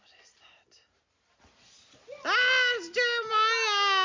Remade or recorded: recorded